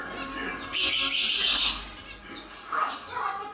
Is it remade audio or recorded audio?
recorded